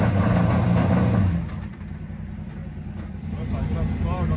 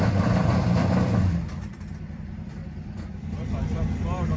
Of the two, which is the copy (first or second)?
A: second